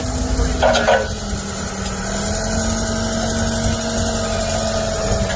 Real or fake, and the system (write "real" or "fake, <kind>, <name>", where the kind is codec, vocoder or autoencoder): real